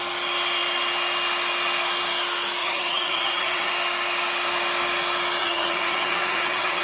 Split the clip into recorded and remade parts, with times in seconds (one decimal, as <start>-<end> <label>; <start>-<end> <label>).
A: 0.0-2.6 recorded; 2.6-3.7 remade; 3.7-5.4 recorded; 5.4-6.8 remade